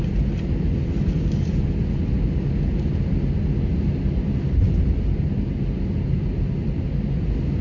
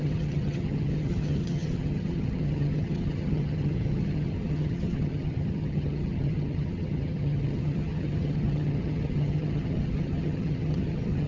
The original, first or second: first